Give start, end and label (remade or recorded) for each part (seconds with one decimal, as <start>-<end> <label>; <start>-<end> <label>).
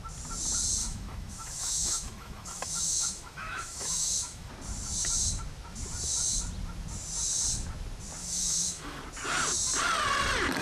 0.0-0.8 recorded; 0.8-4.5 remade; 4.5-8.2 recorded; 8.2-9.0 remade; 9.0-10.6 recorded